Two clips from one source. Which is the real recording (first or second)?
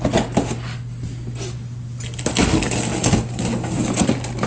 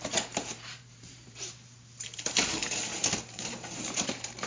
first